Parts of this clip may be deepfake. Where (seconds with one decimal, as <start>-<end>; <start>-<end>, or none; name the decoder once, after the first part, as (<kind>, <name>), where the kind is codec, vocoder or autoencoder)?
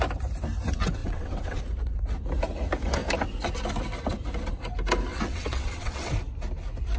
1.0-1.6 (vocoder, WaveNeXt); 5.1-6.1